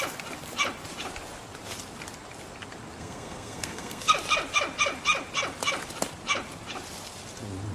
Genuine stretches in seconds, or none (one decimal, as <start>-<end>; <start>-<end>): 0.0-3.0; 4.1-7.7

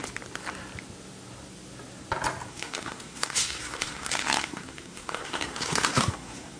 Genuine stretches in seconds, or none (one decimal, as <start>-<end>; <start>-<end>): 0.0-2.5